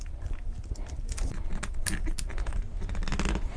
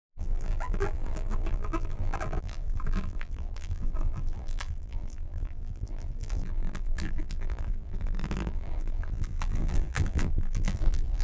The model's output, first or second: second